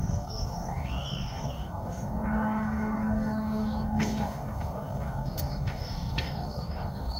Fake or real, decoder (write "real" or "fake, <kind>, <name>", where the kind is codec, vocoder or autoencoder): fake, codec, DAC